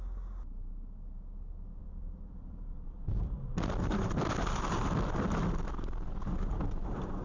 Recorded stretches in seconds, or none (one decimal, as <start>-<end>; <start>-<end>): 0.0-1.8; 6.1-7.2